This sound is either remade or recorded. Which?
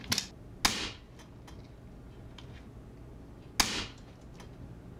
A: recorded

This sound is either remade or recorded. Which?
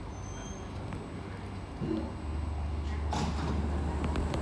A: recorded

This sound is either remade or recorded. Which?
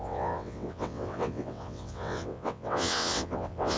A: remade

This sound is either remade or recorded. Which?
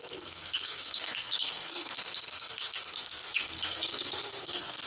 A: remade